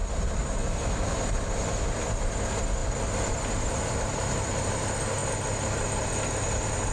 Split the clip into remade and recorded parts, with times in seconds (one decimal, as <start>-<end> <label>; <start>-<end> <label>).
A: 0.0-6.9 recorded